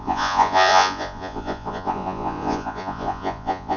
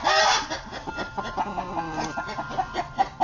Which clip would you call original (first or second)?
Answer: second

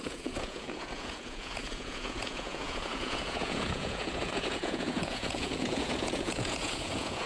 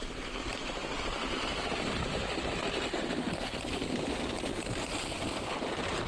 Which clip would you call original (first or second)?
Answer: second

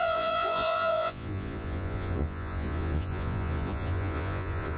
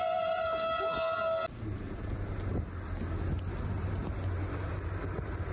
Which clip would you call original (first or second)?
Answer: second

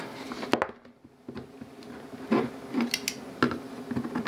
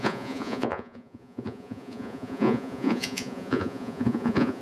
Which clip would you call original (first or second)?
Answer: first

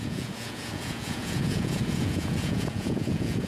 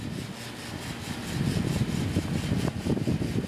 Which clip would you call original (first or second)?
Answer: second